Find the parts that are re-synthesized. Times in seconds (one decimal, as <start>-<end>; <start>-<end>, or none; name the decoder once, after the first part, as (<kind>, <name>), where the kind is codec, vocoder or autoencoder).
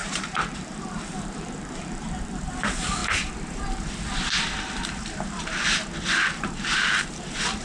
0.0-2.4 (vocoder, BigVGAN v2)